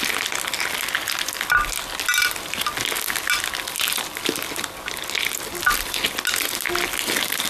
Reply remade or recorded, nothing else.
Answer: recorded